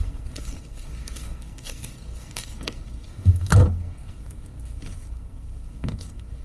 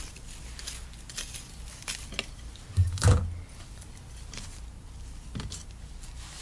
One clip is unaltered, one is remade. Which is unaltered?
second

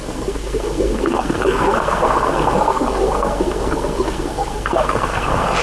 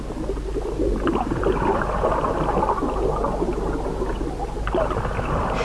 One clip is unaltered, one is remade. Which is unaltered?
second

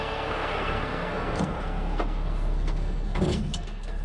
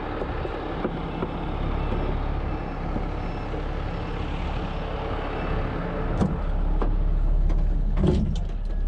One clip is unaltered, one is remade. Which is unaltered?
second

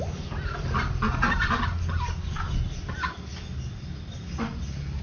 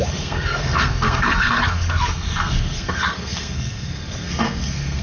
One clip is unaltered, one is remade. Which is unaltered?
first